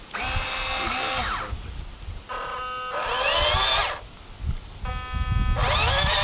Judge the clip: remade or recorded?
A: recorded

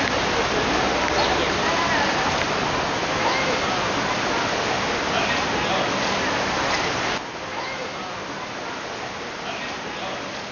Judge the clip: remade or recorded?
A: recorded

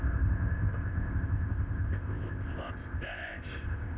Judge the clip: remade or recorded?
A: remade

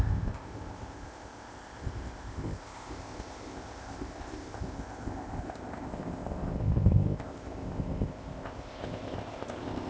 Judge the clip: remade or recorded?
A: remade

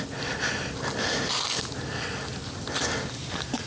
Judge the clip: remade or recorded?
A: recorded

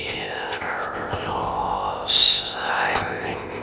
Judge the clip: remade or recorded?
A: remade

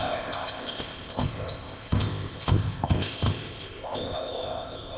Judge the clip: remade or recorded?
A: remade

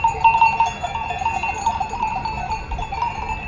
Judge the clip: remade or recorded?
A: recorded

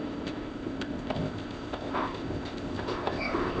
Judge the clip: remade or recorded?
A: remade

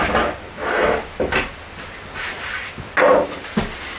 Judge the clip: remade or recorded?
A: recorded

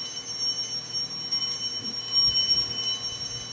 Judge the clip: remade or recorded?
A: recorded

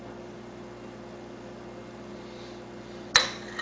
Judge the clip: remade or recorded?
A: recorded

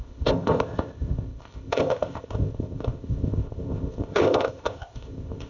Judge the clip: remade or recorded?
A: remade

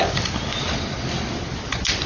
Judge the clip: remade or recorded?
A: recorded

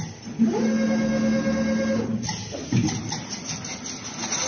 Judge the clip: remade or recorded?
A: recorded